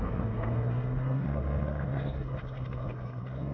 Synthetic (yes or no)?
yes